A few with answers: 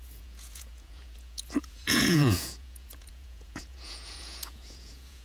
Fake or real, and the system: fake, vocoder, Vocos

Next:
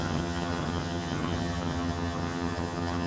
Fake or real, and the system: fake, vocoder, HiFi-GAN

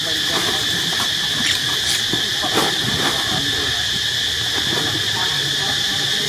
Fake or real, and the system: real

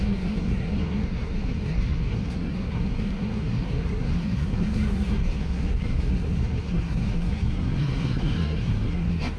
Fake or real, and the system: fake, codec, SNAC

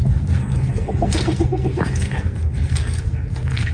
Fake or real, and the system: fake, codec, SNAC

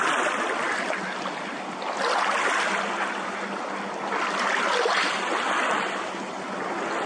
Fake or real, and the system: real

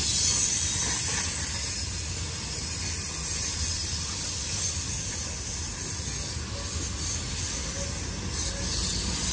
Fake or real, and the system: real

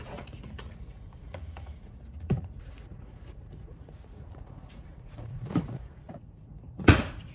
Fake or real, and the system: fake, vocoder, Vocos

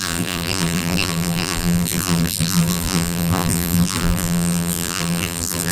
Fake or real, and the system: fake, vocoder, BigVGAN v2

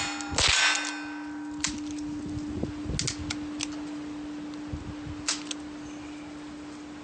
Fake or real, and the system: real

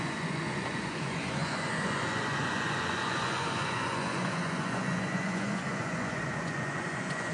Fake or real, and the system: fake, vocoder, Vocos